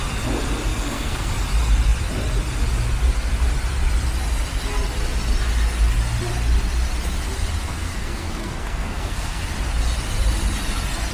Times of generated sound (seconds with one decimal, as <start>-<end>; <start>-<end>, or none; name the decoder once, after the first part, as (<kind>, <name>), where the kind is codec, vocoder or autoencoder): 0.7-1.3 (codec, SNAC); 7.7-9.4

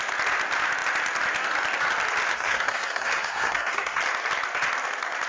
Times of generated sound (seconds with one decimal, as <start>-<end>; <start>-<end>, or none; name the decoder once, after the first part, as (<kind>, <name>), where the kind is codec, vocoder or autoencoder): 2.3-4.0 (codec, SNAC)

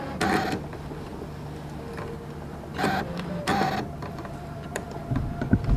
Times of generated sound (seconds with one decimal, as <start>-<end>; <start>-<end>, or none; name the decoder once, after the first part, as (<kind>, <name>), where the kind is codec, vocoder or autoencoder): 0.0-1.1 (vocoder, BigVGAN v2); 2.8-5.0

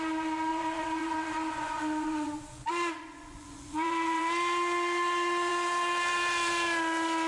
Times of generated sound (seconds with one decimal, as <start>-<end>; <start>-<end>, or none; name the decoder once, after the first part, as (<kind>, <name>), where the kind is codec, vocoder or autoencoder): 0.5-4.2 (vocoder, Vocos)